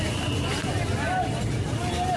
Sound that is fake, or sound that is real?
real